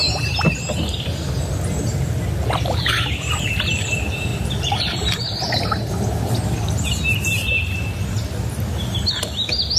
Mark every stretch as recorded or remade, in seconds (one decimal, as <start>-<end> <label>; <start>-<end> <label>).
0.0-4.3 recorded; 4.3-6.4 remade; 6.4-9.8 recorded

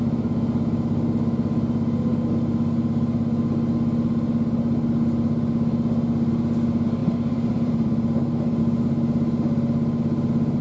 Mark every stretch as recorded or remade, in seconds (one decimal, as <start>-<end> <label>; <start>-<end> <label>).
0.0-7.0 recorded; 7.0-8.6 remade; 8.6-10.6 recorded

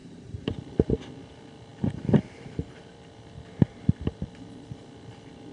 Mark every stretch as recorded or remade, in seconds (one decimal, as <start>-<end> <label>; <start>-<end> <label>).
0.0-0.9 remade; 0.9-1.7 recorded; 1.7-4.8 remade; 4.8-5.5 recorded

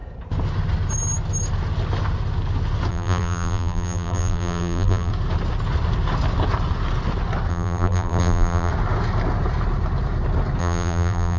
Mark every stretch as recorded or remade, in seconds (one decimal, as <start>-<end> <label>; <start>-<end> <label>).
0.0-2.9 recorded; 2.9-5.1 remade; 5.1-7.5 recorded; 7.5-8.7 remade; 8.7-10.6 recorded; 10.6-11.4 remade

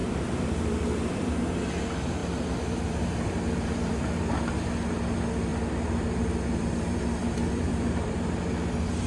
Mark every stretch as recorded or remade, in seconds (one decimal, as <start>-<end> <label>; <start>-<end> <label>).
0.0-1.3 remade; 1.3-2.2 recorded; 2.2-4.0 remade; 4.0-5.5 recorded; 5.5-9.1 remade

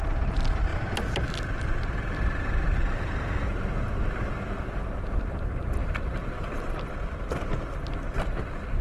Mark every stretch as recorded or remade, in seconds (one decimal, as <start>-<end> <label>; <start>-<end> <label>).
0.0-8.8 recorded